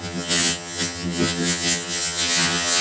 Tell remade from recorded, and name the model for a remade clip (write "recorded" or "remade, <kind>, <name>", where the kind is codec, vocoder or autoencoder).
remade, vocoder, HiFi-GAN